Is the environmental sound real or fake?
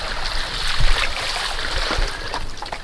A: real